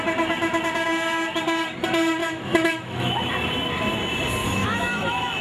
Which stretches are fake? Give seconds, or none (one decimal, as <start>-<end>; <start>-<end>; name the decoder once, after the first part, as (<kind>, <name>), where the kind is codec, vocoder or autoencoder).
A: 2.2-3.3 (autoencoder, DAC-VAE); 4.4-5.4